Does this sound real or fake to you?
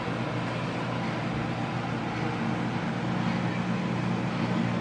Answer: real